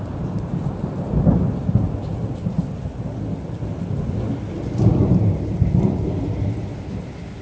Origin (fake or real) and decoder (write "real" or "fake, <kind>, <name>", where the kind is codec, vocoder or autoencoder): real